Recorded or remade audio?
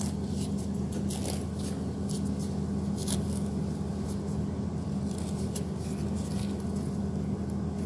recorded